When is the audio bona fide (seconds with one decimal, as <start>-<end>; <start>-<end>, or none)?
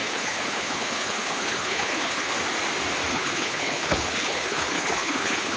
2.3-3.1